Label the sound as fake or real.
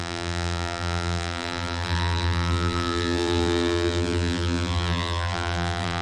fake